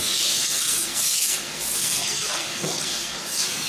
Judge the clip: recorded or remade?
remade